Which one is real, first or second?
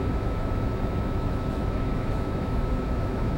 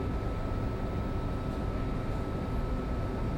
second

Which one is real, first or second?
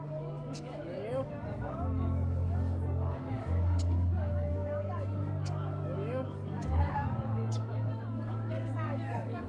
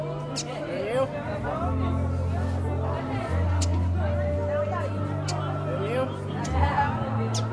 second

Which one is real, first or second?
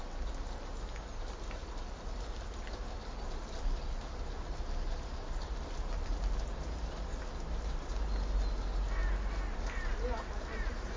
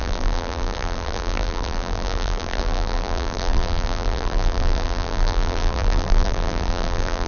first